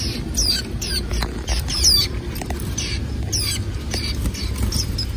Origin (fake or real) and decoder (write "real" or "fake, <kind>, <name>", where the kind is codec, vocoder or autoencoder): real